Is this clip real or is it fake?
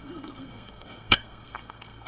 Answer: fake